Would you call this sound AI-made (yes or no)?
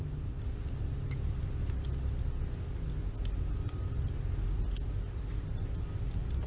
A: no